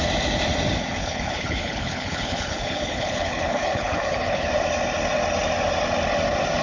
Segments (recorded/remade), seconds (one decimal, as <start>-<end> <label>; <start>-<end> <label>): 0.0-1.0 recorded; 1.0-4.5 remade; 4.5-6.6 recorded